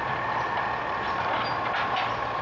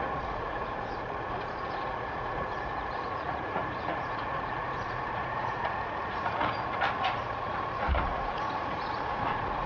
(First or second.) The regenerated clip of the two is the second